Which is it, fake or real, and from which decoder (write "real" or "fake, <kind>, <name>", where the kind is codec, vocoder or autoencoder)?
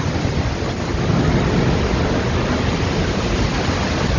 real